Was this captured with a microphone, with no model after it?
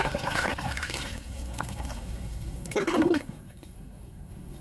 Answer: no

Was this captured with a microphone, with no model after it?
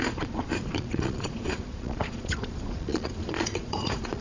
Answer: no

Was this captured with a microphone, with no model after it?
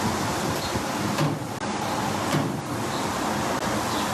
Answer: yes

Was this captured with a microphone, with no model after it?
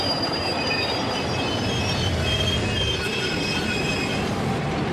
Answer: yes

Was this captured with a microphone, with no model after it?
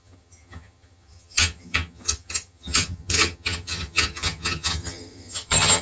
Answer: no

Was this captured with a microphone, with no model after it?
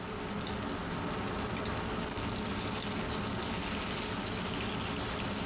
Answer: yes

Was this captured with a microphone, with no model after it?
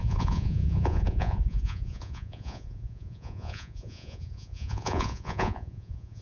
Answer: no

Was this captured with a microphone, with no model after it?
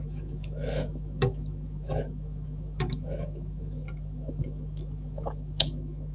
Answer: no